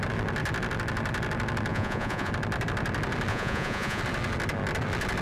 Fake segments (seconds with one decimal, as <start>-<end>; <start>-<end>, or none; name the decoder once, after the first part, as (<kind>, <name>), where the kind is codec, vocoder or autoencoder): 1.7-2.3 (vocoder, Vocos); 3.3-4.0